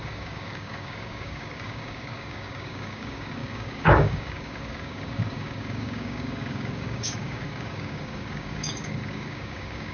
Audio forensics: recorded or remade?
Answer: remade